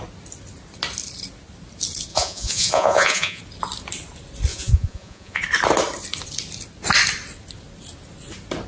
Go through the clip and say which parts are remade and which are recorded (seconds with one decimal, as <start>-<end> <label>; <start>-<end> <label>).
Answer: 0.0-2.1 recorded; 2.1-3.4 remade; 3.4-4.5 recorded; 4.5-5.4 remade; 5.4-8.7 recorded